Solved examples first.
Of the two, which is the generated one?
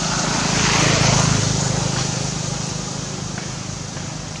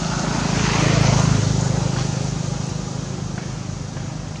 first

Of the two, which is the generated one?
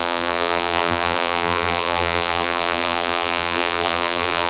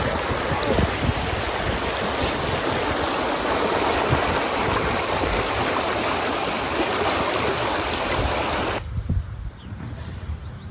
first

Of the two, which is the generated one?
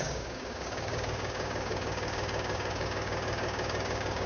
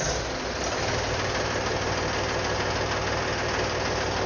first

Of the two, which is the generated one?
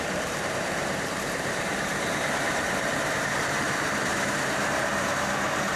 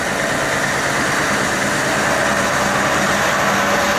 first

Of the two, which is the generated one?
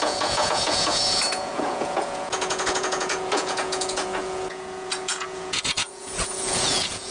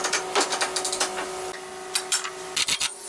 first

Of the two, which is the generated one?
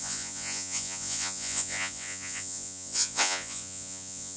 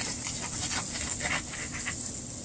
first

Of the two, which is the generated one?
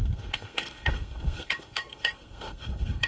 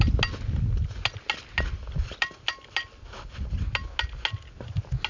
first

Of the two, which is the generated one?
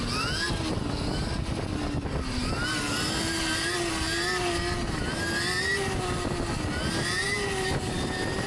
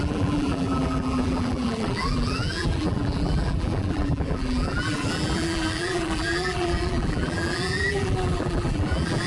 second